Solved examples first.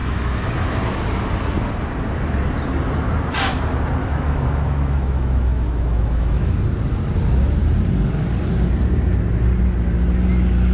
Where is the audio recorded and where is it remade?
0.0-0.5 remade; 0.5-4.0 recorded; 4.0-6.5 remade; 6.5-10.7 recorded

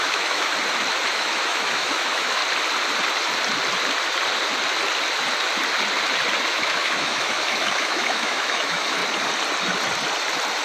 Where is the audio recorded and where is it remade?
0.0-0.5 remade; 0.5-1.1 recorded; 1.1-2.4 remade; 2.4-6.5 recorded; 6.5-9.0 remade; 9.0-10.6 recorded

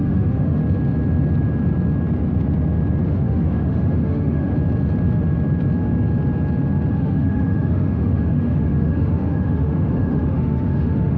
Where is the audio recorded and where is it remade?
0.0-0.6 remade; 0.6-3.0 recorded; 3.0-4.5 remade; 4.5-6.9 recorded; 6.9-11.2 remade

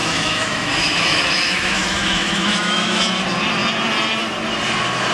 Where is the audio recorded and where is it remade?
0.0-3.0 remade; 3.0-5.1 recorded